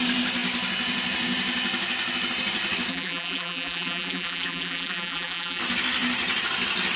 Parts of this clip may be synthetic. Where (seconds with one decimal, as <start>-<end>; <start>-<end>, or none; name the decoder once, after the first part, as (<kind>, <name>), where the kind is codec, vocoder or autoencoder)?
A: 2.9-5.6 (vocoder, BigVGAN v2)